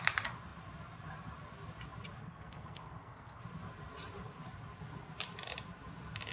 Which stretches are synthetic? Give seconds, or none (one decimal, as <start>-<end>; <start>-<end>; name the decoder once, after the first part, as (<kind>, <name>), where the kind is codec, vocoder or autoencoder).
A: 2.2-3.4 (codec, SNAC)

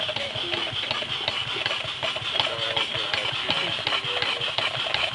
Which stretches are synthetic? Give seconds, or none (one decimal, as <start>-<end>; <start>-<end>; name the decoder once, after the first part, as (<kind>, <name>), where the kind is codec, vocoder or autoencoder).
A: none